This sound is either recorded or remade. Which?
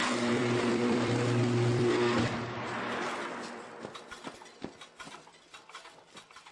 remade